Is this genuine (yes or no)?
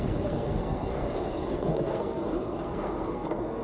no